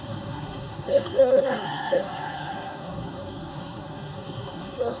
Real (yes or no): no